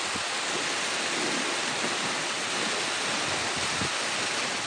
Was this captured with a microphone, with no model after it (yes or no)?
yes